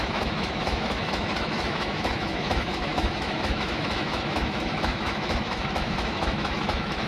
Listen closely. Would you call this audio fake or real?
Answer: fake